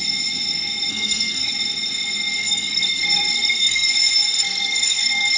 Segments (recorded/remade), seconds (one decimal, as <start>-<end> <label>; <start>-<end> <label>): 0.0-0.9 recorded; 0.9-1.5 remade; 1.5-2.4 recorded; 2.4-3.9 remade; 3.9-4.4 recorded; 4.4-5.4 remade